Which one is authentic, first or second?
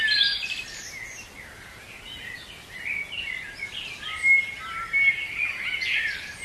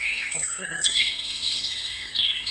first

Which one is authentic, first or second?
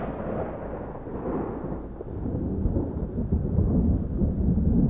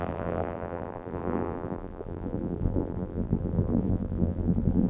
first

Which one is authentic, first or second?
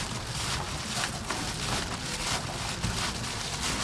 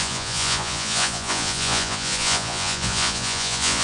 first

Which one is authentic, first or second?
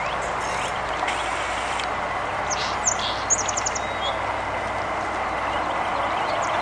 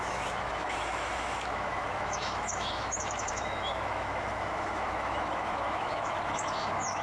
first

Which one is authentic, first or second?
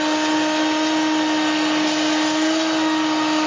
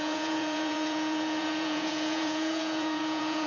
first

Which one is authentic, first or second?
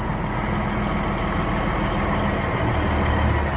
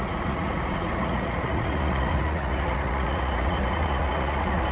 first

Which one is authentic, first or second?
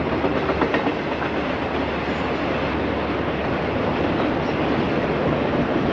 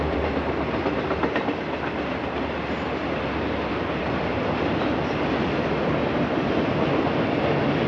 first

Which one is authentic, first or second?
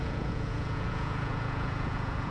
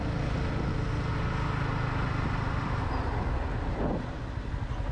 second